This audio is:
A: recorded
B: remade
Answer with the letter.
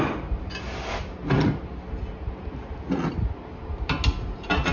A